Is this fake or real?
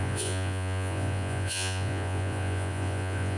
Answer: fake